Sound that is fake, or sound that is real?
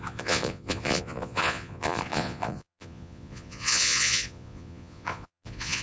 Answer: fake